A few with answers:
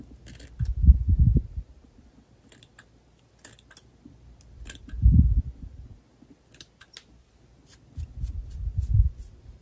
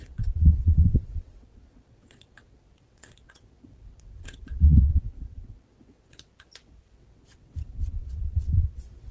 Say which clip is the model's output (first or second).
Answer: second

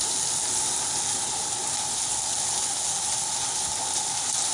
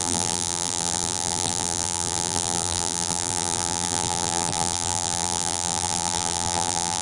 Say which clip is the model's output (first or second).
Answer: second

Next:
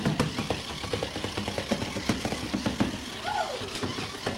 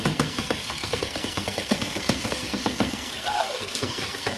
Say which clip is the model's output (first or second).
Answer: second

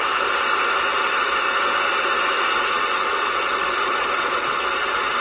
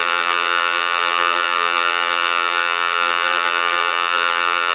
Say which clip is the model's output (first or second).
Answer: second